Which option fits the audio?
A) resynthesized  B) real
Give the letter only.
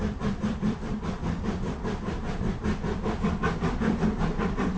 A